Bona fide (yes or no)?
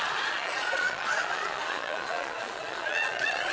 no